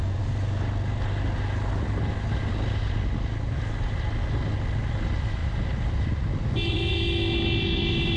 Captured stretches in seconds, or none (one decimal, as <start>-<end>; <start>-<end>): 0.0-8.2